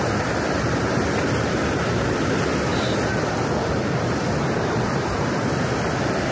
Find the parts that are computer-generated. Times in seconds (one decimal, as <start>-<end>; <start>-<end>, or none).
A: 0.0-6.3